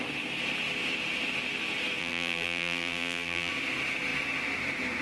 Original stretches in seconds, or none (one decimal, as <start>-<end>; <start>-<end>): 0.0-2.0; 3.5-5.0